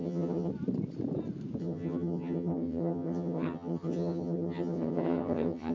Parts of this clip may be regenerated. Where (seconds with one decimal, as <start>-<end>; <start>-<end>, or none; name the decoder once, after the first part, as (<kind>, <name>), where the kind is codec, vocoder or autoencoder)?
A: 0.0-0.5 (vocoder, HiFi-GAN); 1.6-5.7